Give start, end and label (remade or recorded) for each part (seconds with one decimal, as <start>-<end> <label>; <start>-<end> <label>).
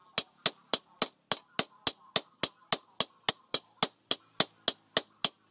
0.0-5.5 recorded